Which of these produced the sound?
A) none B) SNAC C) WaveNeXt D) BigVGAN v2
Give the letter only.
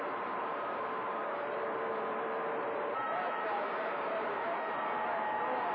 D